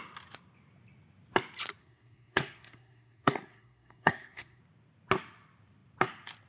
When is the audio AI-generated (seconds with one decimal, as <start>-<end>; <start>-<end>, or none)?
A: 1.8-4.6